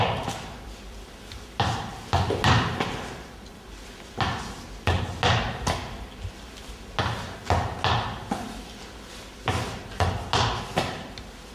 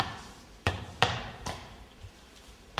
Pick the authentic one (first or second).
first